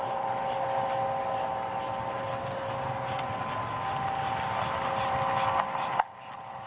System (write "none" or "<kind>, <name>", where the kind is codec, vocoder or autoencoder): none